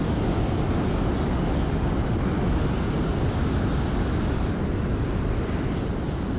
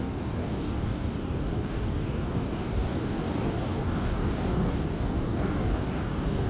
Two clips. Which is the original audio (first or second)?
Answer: first